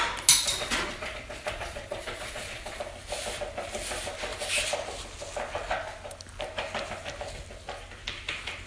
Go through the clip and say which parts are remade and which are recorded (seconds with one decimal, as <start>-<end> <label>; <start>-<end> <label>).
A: 0.0-0.6 recorded; 0.6-2.8 remade; 2.8-8.7 recorded